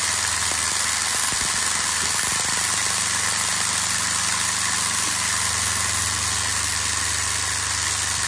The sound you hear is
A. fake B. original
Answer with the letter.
B